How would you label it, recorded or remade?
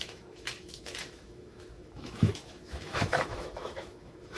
remade